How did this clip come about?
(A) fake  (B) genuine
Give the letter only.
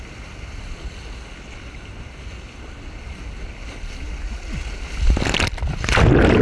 B